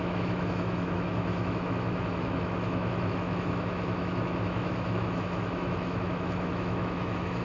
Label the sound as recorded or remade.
remade